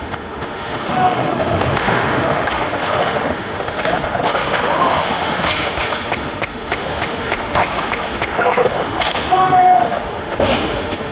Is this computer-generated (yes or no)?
yes